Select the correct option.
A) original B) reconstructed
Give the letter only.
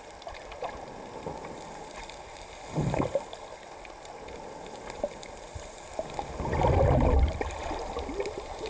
B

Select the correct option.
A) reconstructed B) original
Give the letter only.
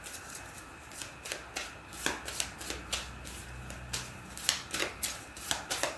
B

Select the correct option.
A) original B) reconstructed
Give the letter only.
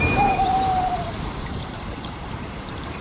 B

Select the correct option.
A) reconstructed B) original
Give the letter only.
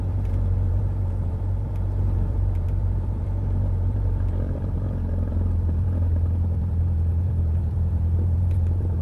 A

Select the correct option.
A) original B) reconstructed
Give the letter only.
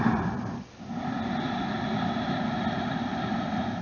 A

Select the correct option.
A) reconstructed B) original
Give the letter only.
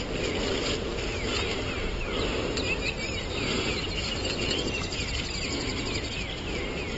B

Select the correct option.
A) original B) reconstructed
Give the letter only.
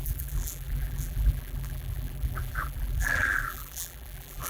B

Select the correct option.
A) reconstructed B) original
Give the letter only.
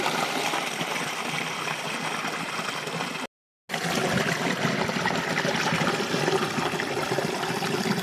B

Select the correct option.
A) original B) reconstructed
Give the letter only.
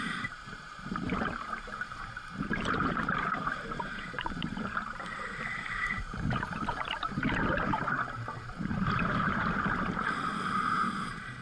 B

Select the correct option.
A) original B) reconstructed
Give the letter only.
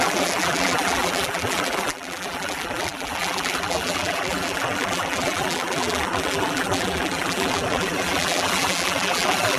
B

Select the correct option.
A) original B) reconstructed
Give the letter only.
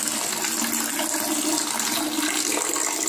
A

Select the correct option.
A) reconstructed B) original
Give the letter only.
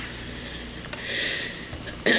A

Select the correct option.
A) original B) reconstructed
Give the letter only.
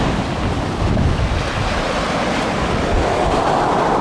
A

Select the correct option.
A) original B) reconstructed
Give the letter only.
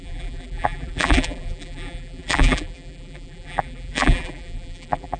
B